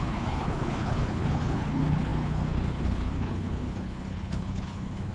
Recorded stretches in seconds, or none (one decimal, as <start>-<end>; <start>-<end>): none